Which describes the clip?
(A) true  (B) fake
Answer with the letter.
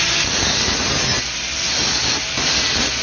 A